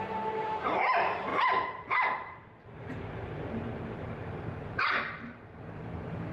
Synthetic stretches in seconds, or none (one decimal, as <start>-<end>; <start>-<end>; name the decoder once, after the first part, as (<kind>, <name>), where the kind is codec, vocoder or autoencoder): 0.0-6.3 (vocoder, BigVGAN v2)